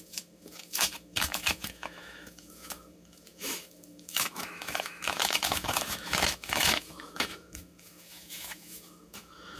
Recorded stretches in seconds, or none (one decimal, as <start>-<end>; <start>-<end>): none